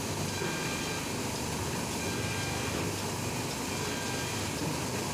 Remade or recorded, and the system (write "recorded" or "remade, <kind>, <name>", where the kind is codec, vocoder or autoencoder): recorded